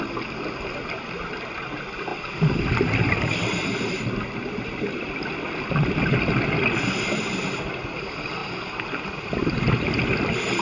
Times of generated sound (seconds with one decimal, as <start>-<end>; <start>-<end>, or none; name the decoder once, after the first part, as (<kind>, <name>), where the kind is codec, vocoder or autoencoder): none